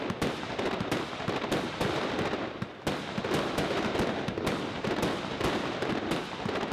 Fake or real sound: real